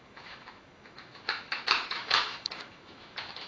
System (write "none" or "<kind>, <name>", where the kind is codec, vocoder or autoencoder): autoencoder, DAC-VAE